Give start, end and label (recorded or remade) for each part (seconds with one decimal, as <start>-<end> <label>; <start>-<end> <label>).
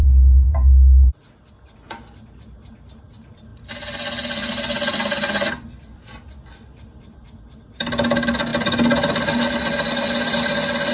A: 0.0-10.9 recorded